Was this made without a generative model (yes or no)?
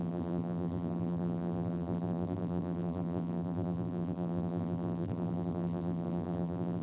no